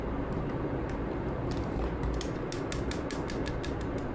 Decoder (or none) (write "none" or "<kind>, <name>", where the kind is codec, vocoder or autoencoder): none